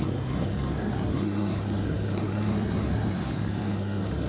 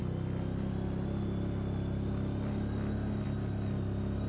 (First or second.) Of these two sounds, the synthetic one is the first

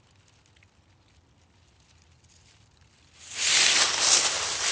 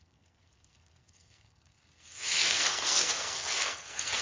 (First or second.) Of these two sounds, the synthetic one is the second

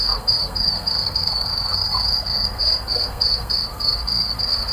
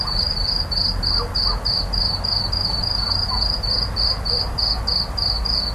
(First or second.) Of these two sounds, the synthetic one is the first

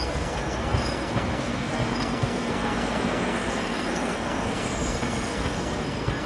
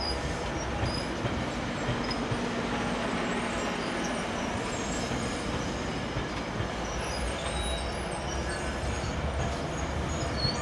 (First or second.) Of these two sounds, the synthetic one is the first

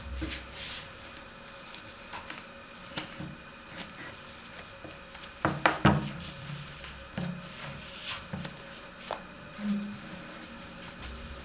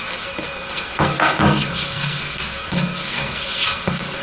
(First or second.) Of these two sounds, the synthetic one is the second